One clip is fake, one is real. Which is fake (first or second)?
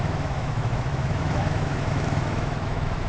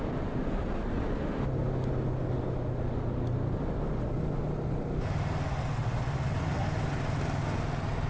first